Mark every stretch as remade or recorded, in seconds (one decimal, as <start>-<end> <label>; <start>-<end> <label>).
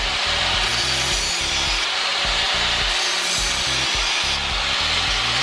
0.0-5.4 recorded